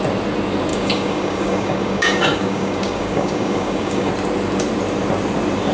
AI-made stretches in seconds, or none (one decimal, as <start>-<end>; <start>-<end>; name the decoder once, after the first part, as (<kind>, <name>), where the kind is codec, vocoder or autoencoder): 0.7-4.1 (codec, DAC)